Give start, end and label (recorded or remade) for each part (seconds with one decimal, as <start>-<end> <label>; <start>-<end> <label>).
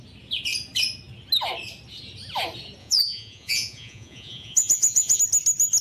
0.0-2.8 recorded; 2.8-5.2 remade; 5.2-5.8 recorded